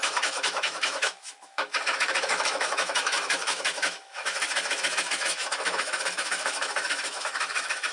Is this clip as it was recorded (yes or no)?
no